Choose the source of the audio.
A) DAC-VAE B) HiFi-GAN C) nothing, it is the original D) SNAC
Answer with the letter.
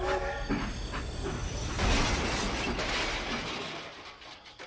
C